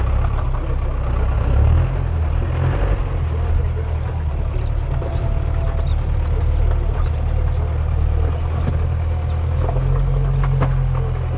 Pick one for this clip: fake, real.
real